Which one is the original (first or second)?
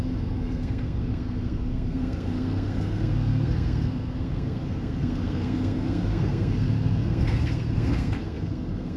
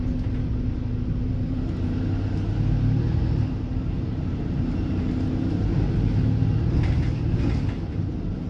second